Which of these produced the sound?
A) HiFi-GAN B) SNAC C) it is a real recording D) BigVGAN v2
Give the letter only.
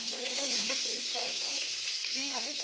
B